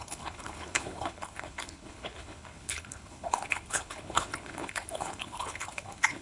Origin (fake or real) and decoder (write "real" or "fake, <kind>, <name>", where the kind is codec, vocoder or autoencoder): fake, codec, HILCodec